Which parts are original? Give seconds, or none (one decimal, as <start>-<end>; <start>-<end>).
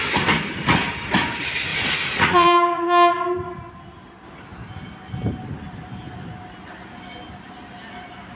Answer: 0.0-1.7; 3.1-8.4